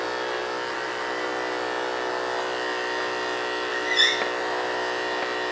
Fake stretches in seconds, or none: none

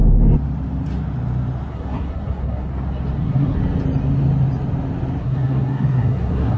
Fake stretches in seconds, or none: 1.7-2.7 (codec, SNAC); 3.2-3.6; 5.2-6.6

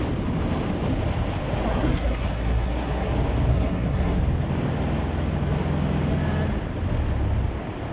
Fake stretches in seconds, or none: 1.7-3.1 (codec, SNAC); 3.5-4.2

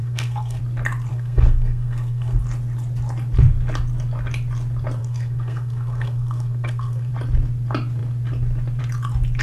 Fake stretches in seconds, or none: 0.0-0.6 (codec, SNAC); 1.1-2.4; 5.0-7.1

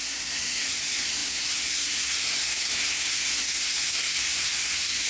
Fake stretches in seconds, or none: 0.0-5.1 (codec, SNAC)